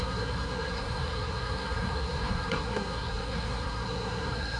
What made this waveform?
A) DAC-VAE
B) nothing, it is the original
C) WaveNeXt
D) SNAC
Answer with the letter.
D